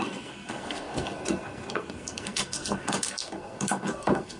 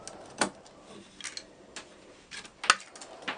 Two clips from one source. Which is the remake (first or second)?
first